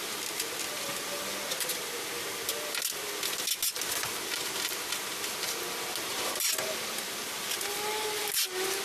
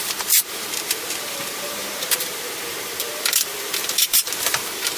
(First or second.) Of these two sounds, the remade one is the second